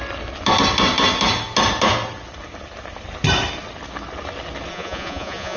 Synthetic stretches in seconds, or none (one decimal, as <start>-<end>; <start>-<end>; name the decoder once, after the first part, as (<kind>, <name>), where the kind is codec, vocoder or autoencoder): 4.7-5.6 (vocoder, Vocos)